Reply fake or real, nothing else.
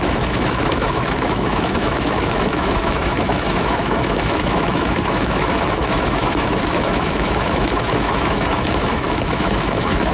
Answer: fake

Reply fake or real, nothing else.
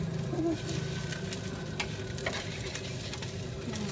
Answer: real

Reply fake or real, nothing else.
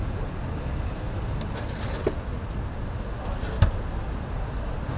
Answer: real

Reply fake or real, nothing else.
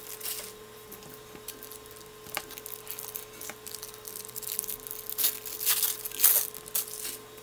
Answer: real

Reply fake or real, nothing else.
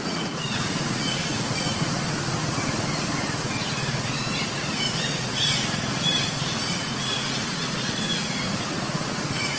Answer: fake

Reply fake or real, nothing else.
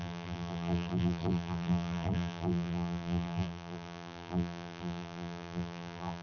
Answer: fake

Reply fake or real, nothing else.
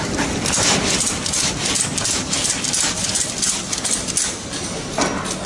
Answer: real